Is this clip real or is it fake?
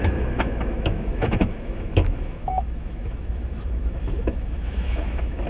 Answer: fake